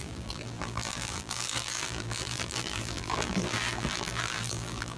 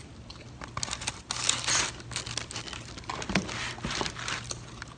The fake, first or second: first